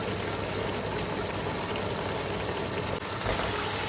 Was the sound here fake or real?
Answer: real